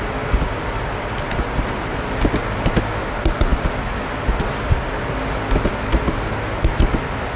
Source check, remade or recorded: recorded